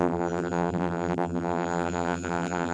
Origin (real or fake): fake